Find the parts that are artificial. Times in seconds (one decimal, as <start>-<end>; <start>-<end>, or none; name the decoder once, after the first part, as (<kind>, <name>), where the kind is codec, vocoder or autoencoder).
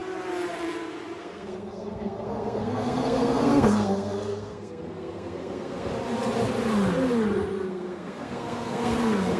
1.2-5.9 (codec, SNAC); 7.7-9.4